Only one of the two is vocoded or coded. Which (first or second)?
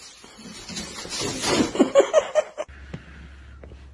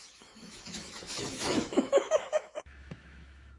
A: second